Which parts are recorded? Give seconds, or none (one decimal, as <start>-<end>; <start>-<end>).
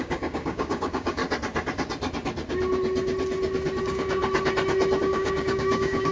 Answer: 1.2-3.8; 4.2-5.0